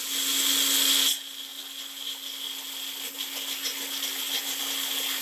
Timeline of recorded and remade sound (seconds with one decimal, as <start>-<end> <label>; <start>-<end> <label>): 0.0-5.2 recorded